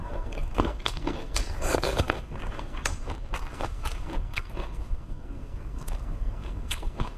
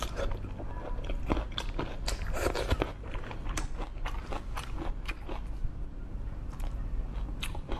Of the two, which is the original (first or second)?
second